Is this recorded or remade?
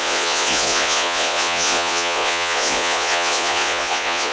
remade